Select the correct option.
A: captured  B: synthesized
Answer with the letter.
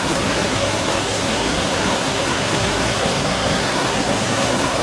B